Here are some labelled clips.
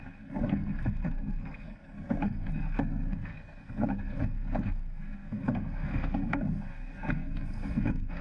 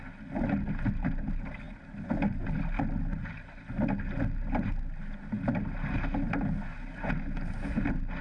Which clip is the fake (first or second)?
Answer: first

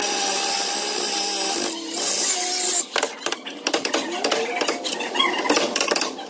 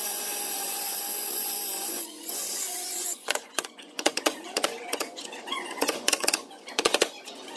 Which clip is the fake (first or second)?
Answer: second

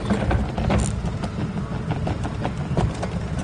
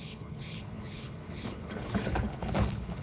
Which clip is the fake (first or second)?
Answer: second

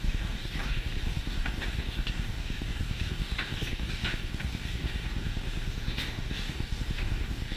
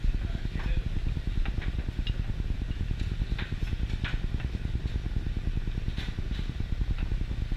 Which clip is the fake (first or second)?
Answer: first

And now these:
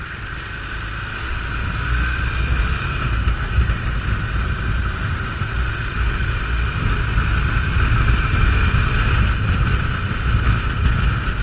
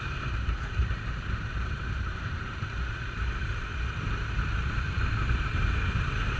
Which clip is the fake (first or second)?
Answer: second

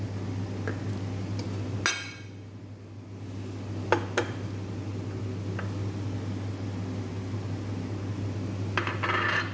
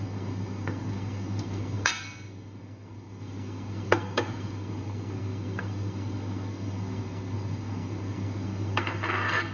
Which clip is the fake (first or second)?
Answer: second